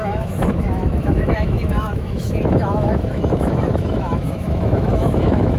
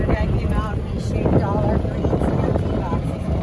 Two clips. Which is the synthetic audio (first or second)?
first